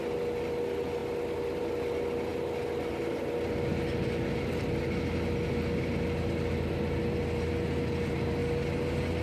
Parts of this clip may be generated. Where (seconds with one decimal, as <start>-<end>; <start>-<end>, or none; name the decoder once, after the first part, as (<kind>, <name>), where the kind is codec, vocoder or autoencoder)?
none